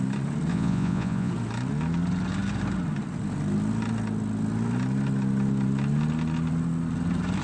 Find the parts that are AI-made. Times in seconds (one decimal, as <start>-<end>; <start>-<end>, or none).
0.5-1.3

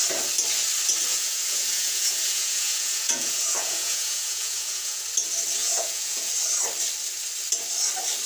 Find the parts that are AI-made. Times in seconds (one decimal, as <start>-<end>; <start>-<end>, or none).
1.1-5.0; 5.6-6.3

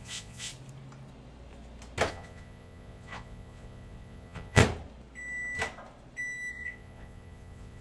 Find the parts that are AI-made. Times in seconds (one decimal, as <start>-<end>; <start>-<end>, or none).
0.0-0.5; 2.1-4.6; 6.5-7.8

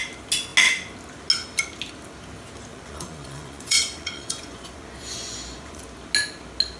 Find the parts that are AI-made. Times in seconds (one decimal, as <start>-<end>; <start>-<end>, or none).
2.7-5.8